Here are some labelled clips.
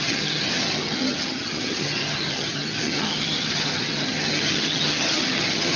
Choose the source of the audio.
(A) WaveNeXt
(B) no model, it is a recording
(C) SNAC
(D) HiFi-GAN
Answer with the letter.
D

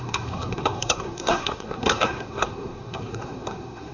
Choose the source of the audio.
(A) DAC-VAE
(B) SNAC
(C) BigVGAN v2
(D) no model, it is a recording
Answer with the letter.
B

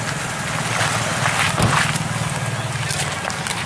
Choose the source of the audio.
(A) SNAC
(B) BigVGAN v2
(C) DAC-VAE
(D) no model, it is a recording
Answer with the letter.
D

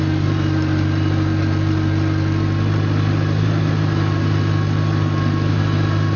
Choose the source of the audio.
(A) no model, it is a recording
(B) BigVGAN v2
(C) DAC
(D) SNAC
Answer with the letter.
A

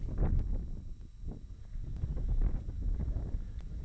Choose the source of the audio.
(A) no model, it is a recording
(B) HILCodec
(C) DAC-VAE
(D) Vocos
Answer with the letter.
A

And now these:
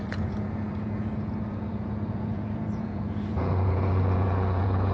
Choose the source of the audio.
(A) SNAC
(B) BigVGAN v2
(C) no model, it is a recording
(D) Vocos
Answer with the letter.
D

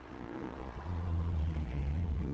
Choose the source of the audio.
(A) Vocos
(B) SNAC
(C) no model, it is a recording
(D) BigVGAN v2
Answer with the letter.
A